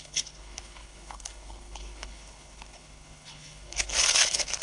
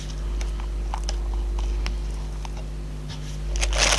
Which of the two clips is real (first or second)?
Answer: second